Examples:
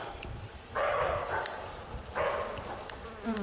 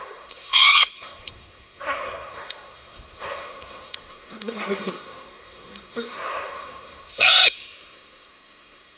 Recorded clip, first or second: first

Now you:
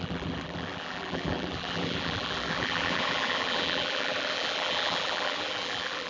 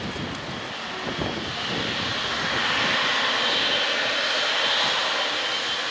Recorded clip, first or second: second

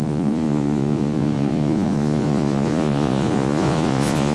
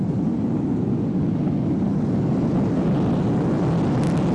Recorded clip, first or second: second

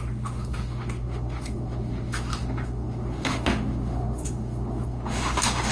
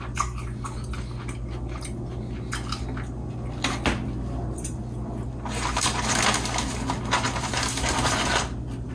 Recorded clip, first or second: second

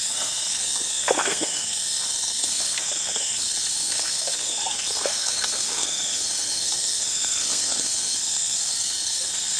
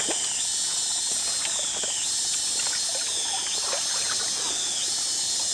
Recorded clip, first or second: second